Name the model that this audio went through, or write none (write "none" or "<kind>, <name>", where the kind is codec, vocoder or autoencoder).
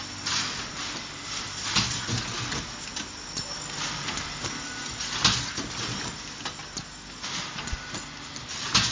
none